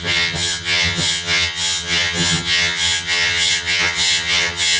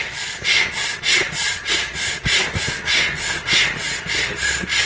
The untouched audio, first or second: second